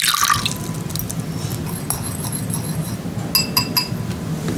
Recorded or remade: recorded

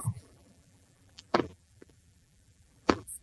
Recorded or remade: remade